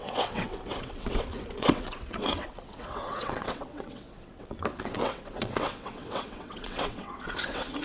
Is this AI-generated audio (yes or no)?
yes